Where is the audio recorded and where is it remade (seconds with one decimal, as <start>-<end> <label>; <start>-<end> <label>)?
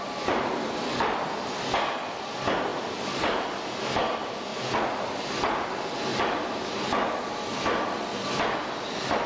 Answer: 0.0-4.5 recorded; 4.5-5.2 remade; 5.2-9.3 recorded